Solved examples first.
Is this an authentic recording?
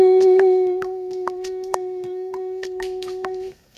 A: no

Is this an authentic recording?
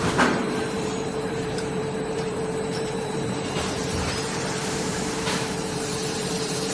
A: no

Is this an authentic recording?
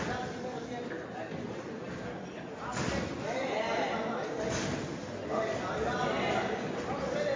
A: yes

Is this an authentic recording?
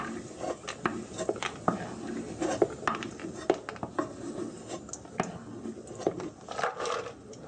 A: yes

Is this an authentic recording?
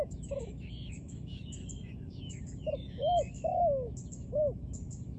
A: no